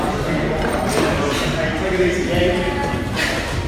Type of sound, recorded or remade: recorded